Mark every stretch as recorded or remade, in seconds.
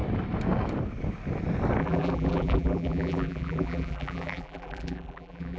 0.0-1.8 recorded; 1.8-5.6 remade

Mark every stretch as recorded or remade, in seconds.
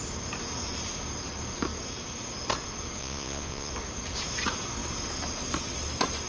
0.0-3.0 recorded; 3.0-3.7 remade; 3.7-6.3 recorded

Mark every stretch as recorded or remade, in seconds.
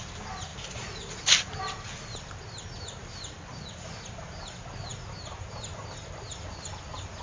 0.0-7.2 recorded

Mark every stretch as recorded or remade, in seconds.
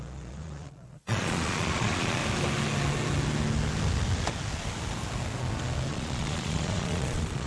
0.0-2.2 remade; 2.2-5.9 recorded; 5.9-7.5 remade